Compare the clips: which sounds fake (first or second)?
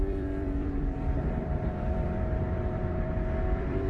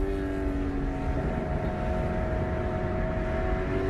first